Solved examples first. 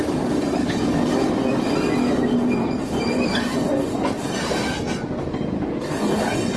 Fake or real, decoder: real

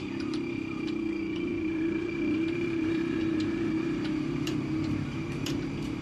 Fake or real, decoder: fake, vocoder, BigVGAN v2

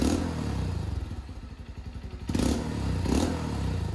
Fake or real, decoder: real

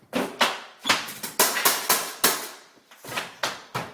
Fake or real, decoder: real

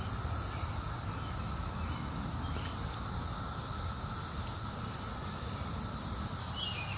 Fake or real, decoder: real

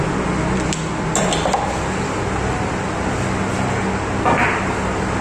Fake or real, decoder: real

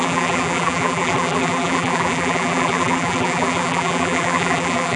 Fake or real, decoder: fake, vocoder, BigVGAN v2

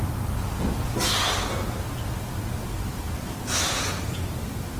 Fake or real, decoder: real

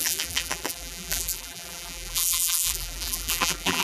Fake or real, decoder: fake, vocoder, BigVGAN v2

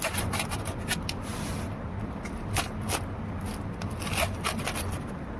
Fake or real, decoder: real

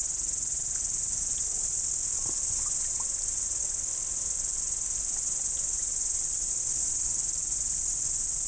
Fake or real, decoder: real